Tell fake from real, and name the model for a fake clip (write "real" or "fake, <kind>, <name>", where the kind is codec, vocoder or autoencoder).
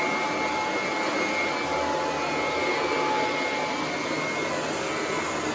real